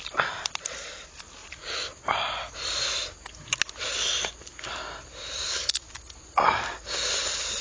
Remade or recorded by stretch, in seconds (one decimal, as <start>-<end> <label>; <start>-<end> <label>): 0.0-1.4 recorded; 1.4-2.2 remade; 2.2-5.2 recorded; 5.2-7.1 remade; 7.1-7.6 recorded